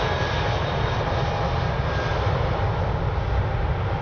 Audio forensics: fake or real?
real